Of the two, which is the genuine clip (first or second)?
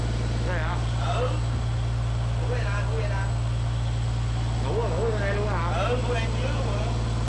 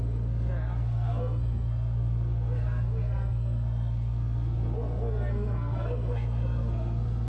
first